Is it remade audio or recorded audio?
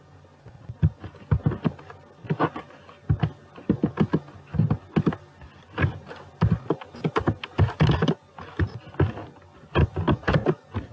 recorded